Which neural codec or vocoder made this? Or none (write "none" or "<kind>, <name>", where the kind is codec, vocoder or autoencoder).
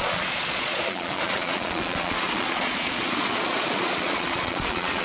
vocoder, Vocos